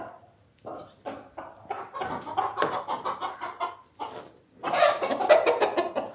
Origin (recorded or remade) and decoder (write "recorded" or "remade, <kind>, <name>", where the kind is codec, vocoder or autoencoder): recorded